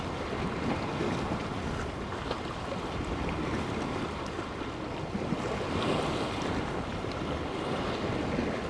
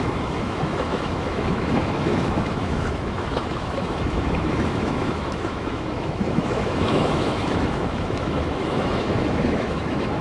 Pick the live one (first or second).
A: first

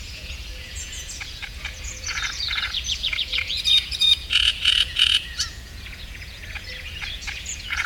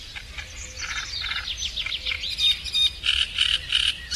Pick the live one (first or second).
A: second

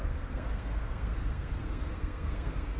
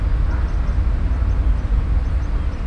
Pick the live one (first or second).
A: second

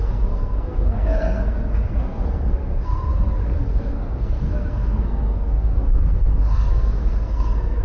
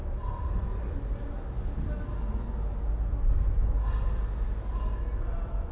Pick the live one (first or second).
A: second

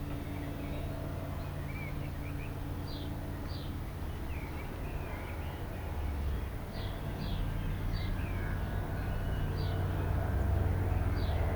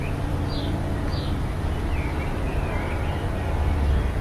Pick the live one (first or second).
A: first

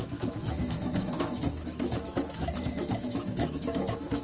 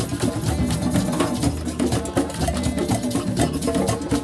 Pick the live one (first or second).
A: second